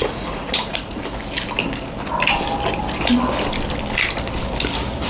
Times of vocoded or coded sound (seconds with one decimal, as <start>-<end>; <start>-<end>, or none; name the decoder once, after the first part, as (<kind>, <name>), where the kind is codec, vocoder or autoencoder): 0.0-1.0 (vocoder, Vocos)